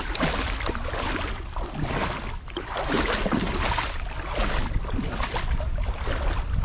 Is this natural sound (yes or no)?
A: yes